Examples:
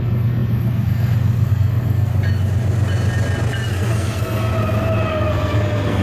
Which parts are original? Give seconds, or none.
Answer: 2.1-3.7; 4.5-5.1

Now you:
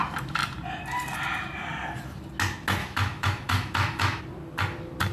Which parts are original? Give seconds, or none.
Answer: 0.0-2.8; 4.2-5.1

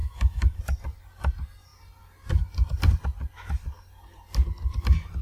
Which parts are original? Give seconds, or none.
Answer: 0.6-5.2

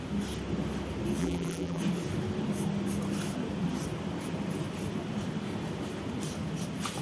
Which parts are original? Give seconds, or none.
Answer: 0.0-1.2; 1.8-7.0

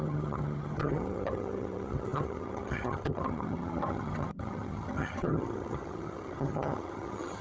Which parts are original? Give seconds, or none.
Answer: none

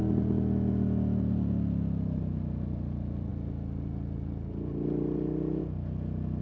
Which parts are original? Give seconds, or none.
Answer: 0.0-6.4